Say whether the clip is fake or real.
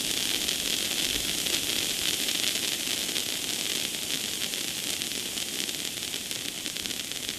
real